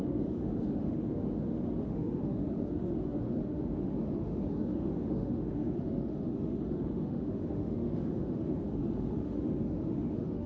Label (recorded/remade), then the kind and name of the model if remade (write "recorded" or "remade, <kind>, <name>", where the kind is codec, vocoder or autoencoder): remade, autoencoder, DAC-VAE